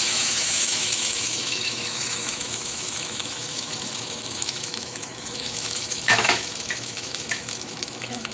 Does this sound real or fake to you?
fake